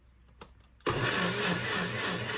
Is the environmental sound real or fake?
real